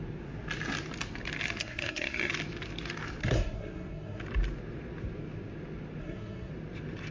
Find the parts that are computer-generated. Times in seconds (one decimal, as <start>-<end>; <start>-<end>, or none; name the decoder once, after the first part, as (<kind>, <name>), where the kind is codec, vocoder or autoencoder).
1.6-2.3 (codec, SNAC); 3.2-4.2; 6.0-6.5